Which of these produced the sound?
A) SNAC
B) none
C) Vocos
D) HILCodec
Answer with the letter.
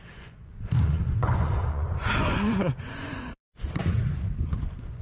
C